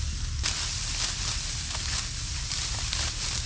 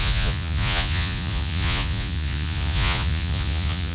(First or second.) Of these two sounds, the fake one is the second